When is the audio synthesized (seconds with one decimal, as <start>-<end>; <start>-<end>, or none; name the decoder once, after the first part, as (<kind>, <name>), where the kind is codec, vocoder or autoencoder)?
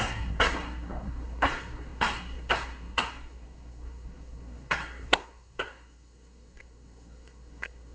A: 0.0-7.9 (codec, SNAC)